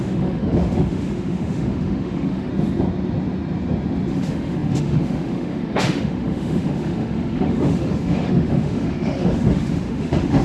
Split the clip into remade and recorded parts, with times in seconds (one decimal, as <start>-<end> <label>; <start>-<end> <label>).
0.0-2.5 remade; 2.5-4.1 recorded; 4.1-10.4 remade

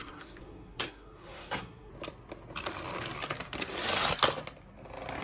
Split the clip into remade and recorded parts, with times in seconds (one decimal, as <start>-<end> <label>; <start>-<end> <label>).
0.0-1.9 remade; 1.9-5.2 recorded

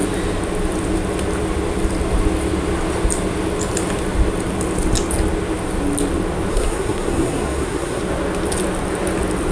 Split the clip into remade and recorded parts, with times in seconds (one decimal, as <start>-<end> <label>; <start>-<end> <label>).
0.0-6.5 recorded; 6.5-8.0 remade; 8.0-9.5 recorded

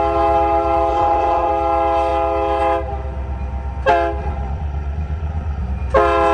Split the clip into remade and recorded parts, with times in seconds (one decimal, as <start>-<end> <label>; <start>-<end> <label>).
0.0-0.9 recorded; 0.9-1.5 remade; 1.5-4.2 recorded; 4.2-5.6 remade; 5.6-6.3 recorded

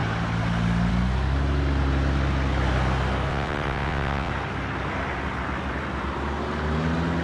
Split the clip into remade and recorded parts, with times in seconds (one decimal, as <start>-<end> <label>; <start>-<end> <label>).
0.0-3.3 recorded; 3.3-4.3 remade; 4.3-7.2 recorded

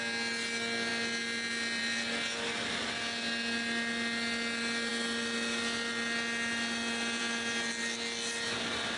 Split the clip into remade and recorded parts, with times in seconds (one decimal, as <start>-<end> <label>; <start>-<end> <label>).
0.0-9.0 recorded